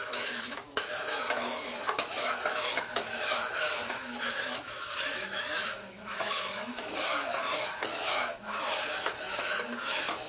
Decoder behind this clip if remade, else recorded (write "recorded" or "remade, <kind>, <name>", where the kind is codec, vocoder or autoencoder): remade, autoencoder, DAC-VAE